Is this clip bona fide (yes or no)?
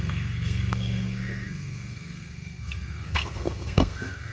no